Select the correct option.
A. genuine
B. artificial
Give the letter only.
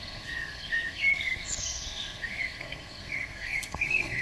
B